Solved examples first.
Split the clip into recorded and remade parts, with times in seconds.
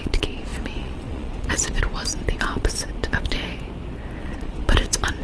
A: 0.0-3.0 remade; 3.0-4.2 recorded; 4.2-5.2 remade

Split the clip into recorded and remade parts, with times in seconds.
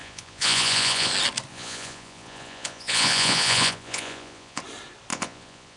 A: 0.0-1.1 remade; 1.1-1.5 recorded; 1.5-4.6 remade; 4.6-5.1 recorded; 5.1-5.8 remade